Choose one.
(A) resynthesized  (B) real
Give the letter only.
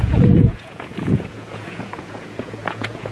A